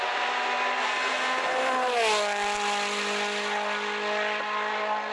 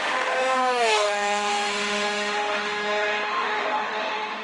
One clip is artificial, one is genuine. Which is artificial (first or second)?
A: second